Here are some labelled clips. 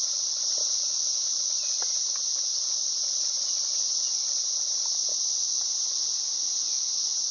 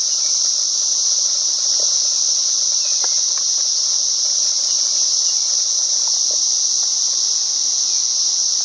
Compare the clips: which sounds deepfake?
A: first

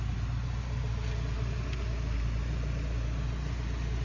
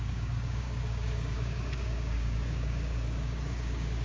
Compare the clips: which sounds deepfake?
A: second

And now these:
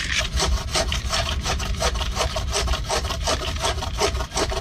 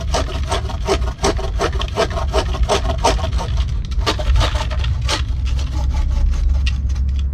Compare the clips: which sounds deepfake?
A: first